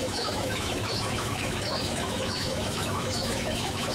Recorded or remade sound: remade